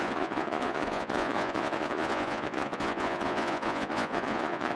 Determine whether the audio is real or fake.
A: fake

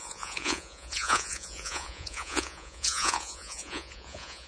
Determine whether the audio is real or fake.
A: fake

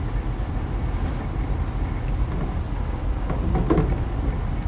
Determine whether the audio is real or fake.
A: real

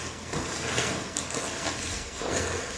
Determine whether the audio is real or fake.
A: fake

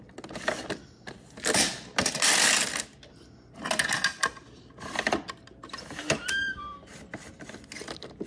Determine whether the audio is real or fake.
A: real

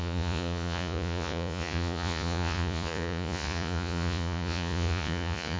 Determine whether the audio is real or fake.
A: fake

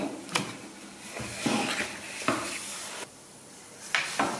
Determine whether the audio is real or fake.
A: real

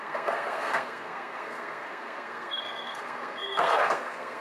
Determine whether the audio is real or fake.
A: fake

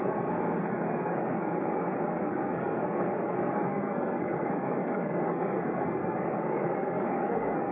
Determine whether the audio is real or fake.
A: fake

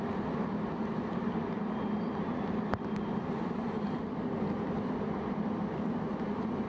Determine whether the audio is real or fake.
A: fake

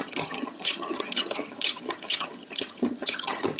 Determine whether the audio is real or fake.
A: fake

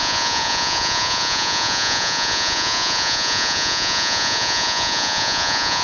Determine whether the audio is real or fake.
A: fake